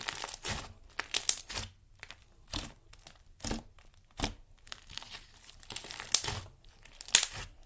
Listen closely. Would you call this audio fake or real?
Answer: real